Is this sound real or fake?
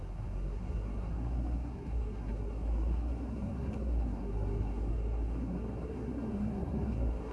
fake